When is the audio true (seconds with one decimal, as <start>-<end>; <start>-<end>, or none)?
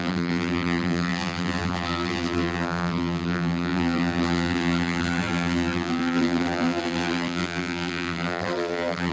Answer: none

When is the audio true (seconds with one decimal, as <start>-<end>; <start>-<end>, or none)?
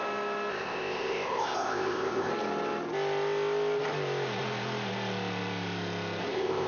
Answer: 0.0-0.5; 2.3-6.3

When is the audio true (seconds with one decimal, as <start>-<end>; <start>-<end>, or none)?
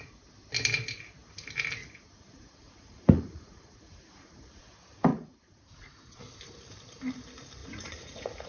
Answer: 0.0-1.8; 4.6-5.1; 6.2-7.6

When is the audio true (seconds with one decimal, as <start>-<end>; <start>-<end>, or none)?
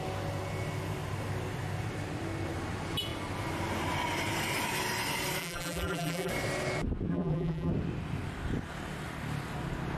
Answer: 0.0-5.4; 6.3-7.1; 7.7-10.0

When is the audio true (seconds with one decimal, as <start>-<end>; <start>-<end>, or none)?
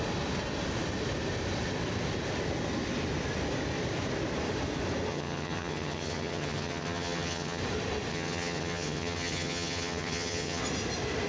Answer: 0.0-5.1; 7.6-8.1; 10.6-11.3